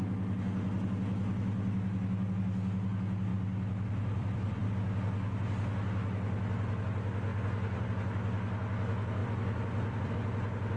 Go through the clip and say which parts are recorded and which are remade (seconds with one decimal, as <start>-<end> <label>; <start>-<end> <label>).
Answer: 0.0-3.3 recorded; 3.3-4.7 remade; 4.7-7.3 recorded; 7.3-7.9 remade; 7.9-9.2 recorded; 9.2-10.1 remade; 10.1-10.8 recorded